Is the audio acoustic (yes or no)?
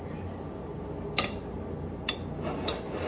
yes